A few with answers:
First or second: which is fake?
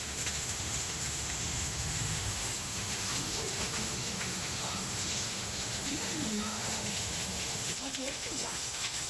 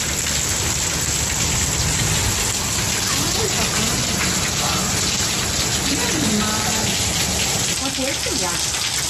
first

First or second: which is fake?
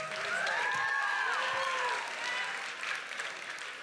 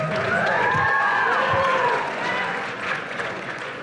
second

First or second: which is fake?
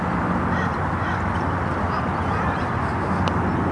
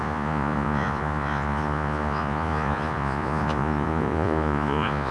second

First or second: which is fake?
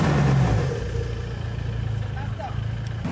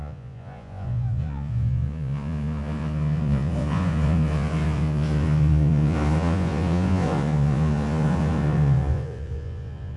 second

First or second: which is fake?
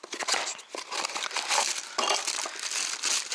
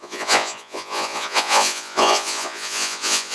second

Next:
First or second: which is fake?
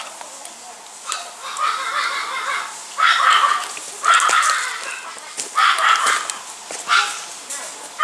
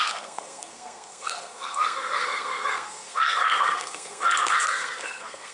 second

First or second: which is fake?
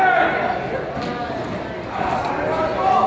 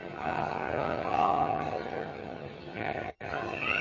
second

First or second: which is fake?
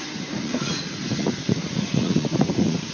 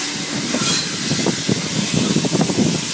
first